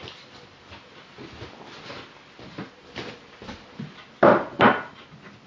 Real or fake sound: real